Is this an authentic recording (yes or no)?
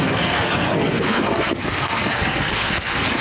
no